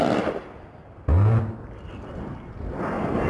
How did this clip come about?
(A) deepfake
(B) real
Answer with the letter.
B